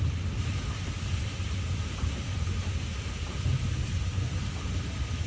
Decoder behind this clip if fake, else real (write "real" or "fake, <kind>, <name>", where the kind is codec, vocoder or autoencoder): real